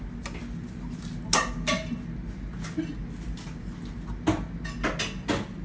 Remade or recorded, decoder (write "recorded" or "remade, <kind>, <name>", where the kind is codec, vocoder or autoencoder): recorded